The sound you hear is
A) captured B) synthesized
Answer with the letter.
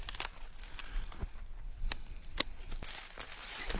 A